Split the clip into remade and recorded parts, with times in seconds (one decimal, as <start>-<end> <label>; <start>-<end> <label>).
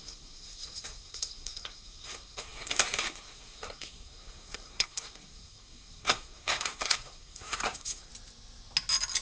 0.0-8.1 remade; 8.1-9.2 recorded